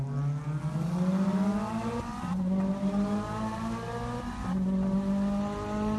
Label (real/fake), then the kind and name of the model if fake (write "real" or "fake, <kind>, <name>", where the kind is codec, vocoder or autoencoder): real